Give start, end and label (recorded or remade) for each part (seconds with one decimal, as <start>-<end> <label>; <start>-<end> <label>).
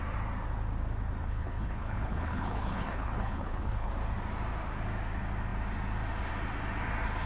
0.0-1.2 recorded; 1.2-3.9 remade; 3.9-7.3 recorded